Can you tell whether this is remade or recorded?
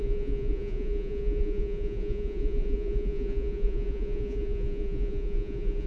remade